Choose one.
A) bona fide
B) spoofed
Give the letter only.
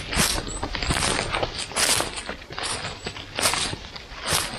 A